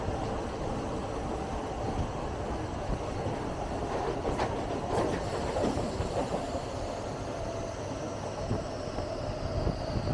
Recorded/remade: recorded